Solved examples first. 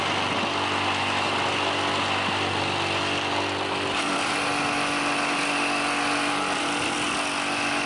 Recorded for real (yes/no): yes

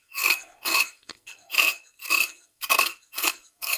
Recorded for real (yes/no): no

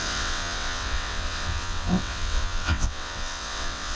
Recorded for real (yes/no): no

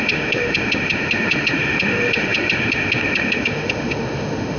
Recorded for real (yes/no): no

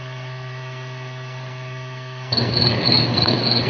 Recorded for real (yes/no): no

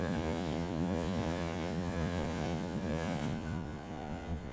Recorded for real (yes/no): no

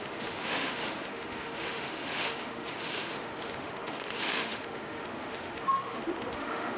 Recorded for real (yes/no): no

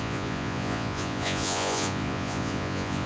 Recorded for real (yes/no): no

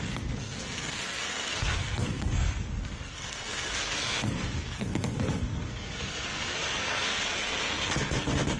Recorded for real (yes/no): no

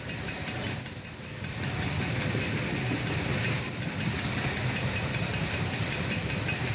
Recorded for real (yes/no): yes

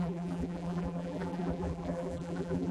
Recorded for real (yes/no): no